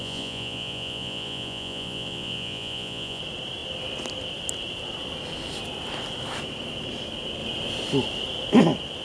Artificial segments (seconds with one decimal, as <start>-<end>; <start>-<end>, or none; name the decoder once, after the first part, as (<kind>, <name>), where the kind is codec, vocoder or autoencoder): 0.0-3.2 (vocoder, Vocos)